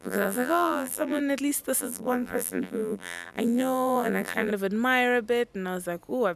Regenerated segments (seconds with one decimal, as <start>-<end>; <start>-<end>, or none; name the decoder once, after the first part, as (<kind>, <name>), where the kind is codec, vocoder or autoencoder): 0.0-1.2 (vocoder, BigVGAN v2); 1.8-4.5